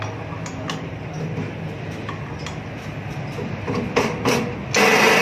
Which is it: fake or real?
real